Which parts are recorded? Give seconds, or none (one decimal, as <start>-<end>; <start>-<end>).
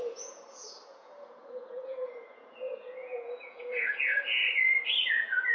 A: 4.4-5.1